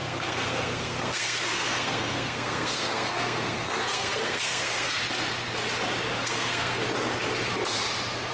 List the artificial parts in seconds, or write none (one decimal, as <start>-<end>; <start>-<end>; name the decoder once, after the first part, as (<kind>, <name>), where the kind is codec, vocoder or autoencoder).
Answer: 0.0-5.0 (codec, SNAC); 6.2-6.8